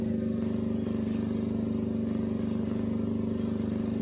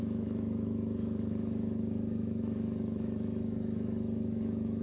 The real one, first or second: first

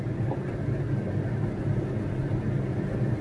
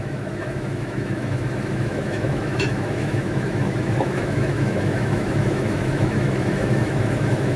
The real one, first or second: first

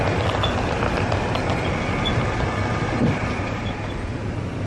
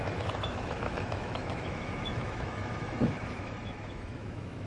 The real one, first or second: first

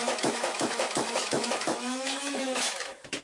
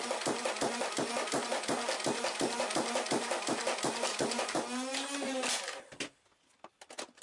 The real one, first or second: second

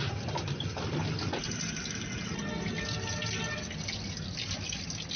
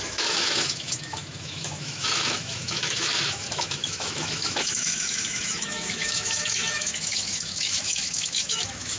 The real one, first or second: first